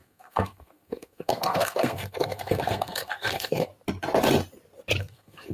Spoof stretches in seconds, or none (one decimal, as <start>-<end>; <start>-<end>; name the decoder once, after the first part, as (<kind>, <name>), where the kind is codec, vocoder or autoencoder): 0.0-3.7 (codec, SNAC); 5.0-5.5